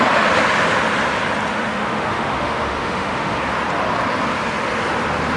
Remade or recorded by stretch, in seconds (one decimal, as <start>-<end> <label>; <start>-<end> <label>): 0.0-1.5 recorded; 1.5-3.4 remade; 3.4-5.4 recorded